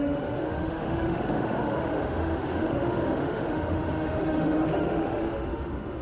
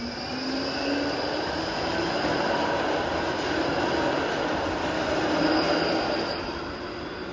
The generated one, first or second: first